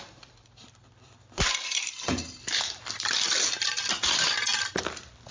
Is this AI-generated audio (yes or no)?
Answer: yes